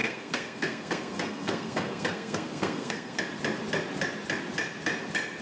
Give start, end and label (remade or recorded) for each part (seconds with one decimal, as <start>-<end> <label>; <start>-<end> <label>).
0.0-3.2 remade; 3.2-5.4 recorded